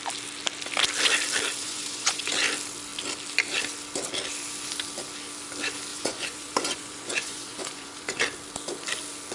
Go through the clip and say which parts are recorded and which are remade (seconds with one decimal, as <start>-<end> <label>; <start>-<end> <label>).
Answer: 0.0-1.6 recorded; 1.6-2.3 remade; 2.3-5.9 recorded; 5.9-8.2 remade; 8.2-9.3 recorded